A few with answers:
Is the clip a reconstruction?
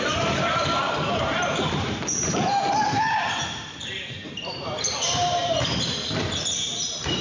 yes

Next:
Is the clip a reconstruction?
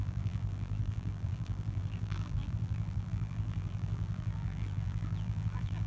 yes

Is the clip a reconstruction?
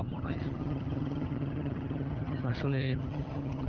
yes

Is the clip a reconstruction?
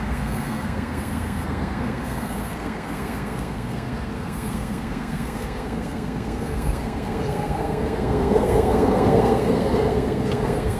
yes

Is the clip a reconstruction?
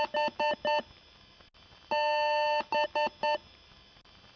no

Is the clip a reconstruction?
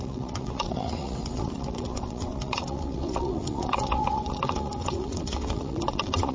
yes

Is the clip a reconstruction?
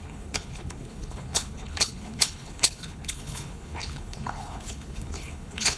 yes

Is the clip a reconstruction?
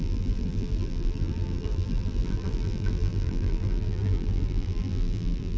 yes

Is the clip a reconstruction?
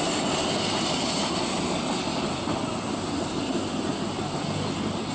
no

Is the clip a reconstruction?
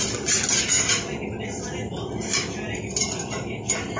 no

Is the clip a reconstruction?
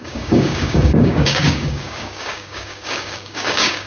yes